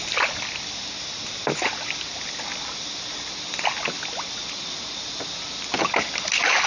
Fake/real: real